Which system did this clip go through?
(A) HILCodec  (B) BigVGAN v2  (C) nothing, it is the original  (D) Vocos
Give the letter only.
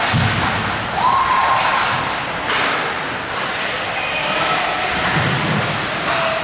C